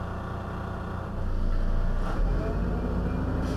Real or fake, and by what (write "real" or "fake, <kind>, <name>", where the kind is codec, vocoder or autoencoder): real